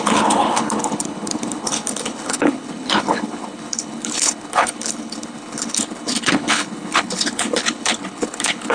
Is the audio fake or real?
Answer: fake